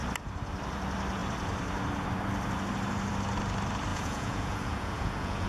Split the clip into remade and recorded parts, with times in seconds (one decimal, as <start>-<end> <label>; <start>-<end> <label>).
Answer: 0.0-3.9 recorded; 3.9-5.5 remade